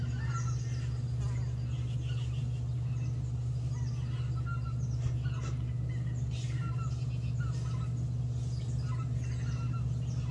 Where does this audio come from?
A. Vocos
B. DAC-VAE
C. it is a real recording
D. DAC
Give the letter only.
C